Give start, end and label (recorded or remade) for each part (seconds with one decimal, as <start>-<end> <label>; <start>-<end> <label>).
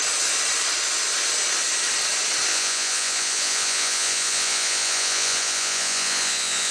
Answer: 0.0-2.5 recorded; 2.5-6.7 remade